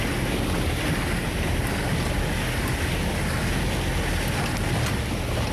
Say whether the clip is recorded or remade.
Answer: recorded